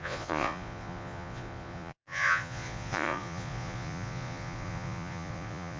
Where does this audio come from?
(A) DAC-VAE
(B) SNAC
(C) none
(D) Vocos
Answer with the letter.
D